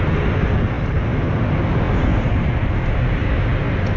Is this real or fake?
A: real